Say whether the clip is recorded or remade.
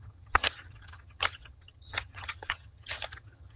remade